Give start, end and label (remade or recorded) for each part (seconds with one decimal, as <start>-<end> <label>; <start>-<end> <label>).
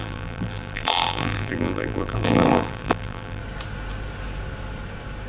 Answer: 0.0-3.4 remade; 3.4-5.3 recorded